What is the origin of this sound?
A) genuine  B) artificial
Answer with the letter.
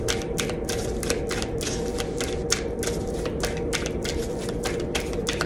A